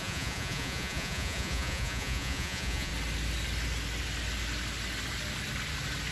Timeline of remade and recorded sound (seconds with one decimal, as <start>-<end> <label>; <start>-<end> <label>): 0.0-2.9 remade; 2.9-6.1 recorded